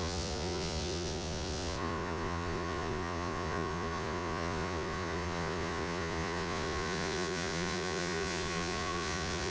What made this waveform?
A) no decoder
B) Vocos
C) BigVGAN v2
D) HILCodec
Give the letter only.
B